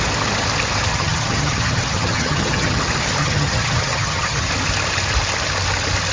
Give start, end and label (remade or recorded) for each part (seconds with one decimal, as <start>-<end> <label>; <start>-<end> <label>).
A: 0.0-0.9 recorded; 0.9-2.8 remade; 2.8-3.2 recorded; 3.2-4.5 remade; 4.5-6.1 recorded